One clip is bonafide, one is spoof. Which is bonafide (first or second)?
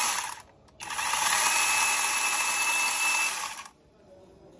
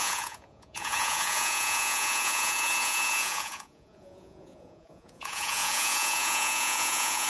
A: first